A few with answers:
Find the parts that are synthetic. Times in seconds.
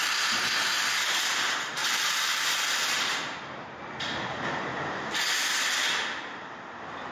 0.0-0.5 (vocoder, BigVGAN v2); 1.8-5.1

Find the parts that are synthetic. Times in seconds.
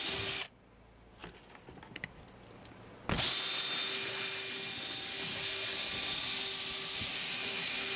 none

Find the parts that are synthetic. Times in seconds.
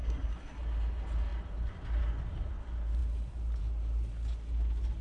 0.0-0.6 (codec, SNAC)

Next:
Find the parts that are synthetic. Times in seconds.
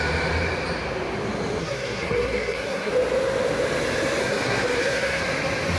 1.6-2.9 (codec, SNAC); 4.2-5.2